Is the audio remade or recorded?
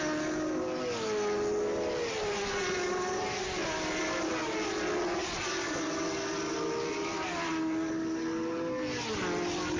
recorded